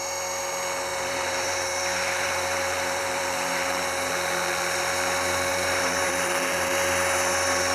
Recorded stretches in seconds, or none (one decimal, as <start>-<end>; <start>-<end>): 0.0-0.9; 4.1-5.5; 6.7-7.7